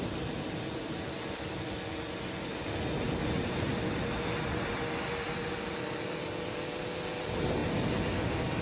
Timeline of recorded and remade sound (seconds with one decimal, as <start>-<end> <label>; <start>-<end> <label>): 0.0-8.6 recorded